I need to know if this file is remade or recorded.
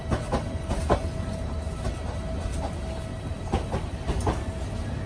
recorded